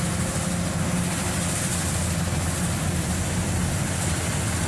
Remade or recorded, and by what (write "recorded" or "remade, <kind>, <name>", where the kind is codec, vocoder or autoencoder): recorded